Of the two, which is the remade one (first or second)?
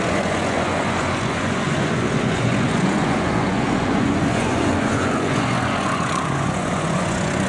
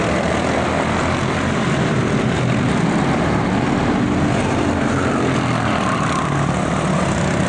first